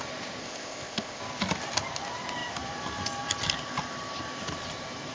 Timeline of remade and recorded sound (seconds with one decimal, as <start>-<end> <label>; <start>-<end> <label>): 0.0-0.4 recorded; 0.4-1.2 remade; 1.2-5.1 recorded